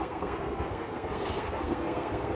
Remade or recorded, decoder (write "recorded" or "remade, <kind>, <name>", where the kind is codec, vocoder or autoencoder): remade, codec, SNAC